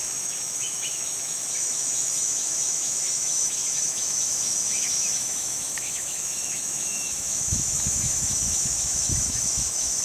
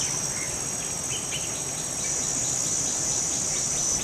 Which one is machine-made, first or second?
first